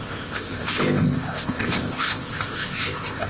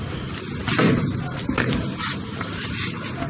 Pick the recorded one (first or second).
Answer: second